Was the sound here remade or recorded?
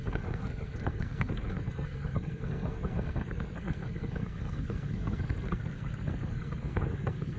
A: remade